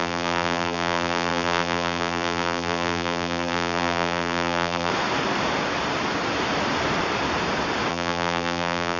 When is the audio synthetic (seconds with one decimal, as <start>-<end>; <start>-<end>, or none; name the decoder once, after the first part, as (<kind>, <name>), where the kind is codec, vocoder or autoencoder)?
0.0-4.9 (vocoder, BigVGAN v2); 7.9-9.0